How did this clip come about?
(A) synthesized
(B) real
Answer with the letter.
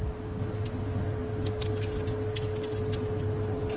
B